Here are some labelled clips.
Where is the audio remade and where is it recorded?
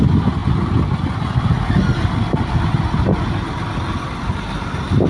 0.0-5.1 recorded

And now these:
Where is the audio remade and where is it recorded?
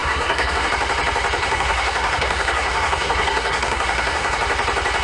0.0-0.7 remade; 0.7-1.4 recorded; 1.4-4.4 remade; 4.4-5.0 recorded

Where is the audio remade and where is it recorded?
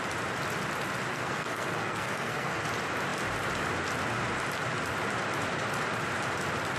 0.0-1.1 recorded; 1.1-2.6 remade; 2.6-6.8 recorded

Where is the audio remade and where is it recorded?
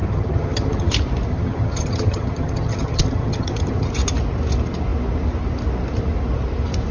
0.0-0.9 remade; 0.9-1.3 recorded; 1.3-3.9 remade; 3.9-6.9 recorded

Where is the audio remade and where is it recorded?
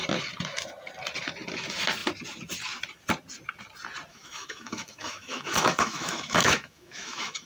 0.0-4.1 recorded; 4.1-7.5 remade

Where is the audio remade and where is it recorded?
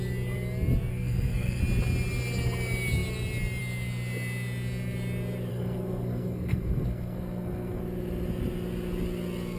0.0-0.9 recorded; 0.9-1.6 remade; 1.6-5.5 recorded; 5.5-7.8 remade; 7.8-9.6 recorded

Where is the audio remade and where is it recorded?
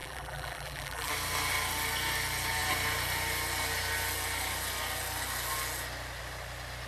0.0-1.1 remade; 1.1-6.9 recorded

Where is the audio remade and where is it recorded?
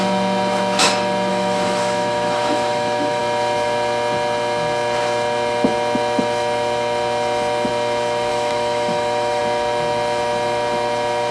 0.0-1.3 recorded; 1.3-3.2 remade; 3.2-8.3 recorded; 8.3-9.4 remade; 9.4-11.3 recorded